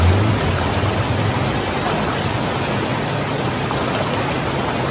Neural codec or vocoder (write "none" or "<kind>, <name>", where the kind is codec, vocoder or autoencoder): none